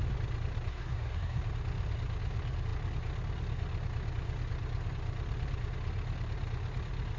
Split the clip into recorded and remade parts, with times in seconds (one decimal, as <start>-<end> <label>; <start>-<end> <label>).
0.0-0.7 recorded; 0.7-1.4 remade; 1.4-7.2 recorded